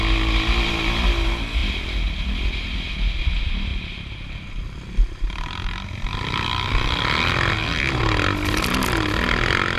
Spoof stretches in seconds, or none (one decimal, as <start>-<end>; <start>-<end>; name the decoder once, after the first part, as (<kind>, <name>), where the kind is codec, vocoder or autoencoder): none

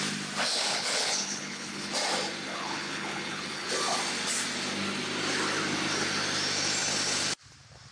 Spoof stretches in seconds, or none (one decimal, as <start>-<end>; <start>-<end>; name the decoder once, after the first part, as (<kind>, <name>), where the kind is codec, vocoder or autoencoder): 0.5-1.9 (codec, HILCodec); 2.5-3.7

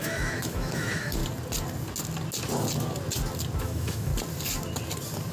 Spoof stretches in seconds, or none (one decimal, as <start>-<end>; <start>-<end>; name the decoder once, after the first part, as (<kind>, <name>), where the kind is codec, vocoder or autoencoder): 0.0-1.2 (autoencoder, DAC-VAE); 3.6-4.1

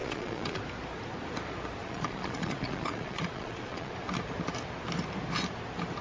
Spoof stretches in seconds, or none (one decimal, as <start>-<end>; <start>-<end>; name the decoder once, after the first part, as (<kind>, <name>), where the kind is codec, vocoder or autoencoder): 0.0-0.6 (vocoder, Vocos); 1.8-3.9

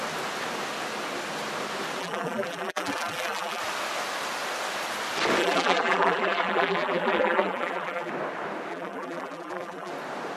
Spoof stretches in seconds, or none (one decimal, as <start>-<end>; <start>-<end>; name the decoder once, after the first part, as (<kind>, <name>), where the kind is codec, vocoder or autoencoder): 2.0-3.6 (vocoder, BigVGAN v2); 5.4-8.1; 8.7-9.9

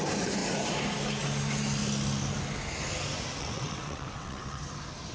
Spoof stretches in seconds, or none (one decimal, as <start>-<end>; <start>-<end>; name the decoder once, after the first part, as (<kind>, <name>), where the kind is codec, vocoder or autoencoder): 3.4-4.6 (vocoder, WaveNeXt)

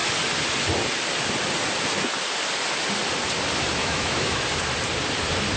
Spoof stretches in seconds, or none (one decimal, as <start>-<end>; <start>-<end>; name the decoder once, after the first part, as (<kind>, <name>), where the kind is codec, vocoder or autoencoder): 3.8-4.4 (autoencoder, DAC-VAE)